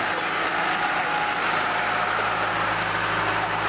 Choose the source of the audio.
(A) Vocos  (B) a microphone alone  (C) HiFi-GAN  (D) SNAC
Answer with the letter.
B